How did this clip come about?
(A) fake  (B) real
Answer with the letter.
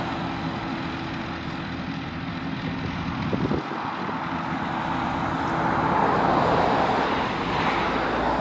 B